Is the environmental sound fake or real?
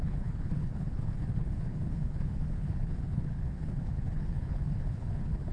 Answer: fake